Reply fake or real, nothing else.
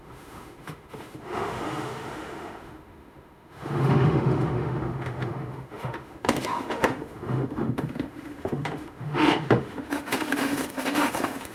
fake